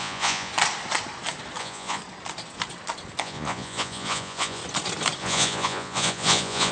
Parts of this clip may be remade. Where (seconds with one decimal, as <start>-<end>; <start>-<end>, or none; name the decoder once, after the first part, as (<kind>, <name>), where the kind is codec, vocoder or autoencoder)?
0.0-0.5 (vocoder, Vocos); 1.6-2.0; 3.2-4.6; 5.2-6.7